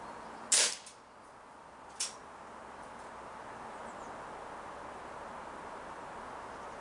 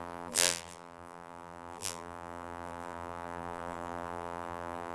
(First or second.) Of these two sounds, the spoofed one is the second